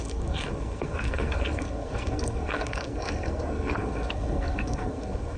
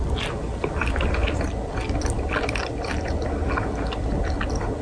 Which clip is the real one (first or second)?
second